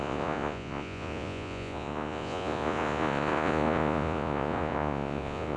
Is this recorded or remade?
remade